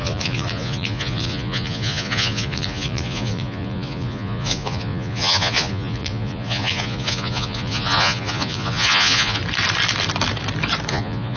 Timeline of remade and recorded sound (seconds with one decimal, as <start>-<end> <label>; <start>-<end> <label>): 0.0-9.4 remade; 9.4-10.9 recorded; 10.9-11.4 remade